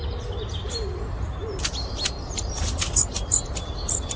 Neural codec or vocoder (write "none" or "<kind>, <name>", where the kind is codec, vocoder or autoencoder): vocoder, BigVGAN v2